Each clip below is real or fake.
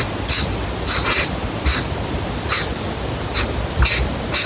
real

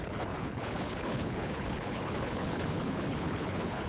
fake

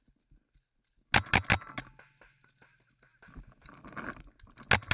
real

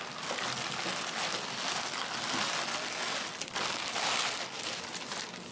real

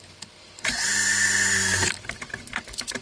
real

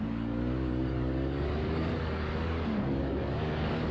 fake